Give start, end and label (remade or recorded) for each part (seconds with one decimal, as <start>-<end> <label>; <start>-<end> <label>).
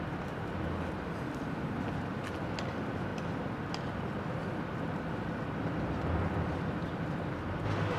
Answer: 0.0-8.0 recorded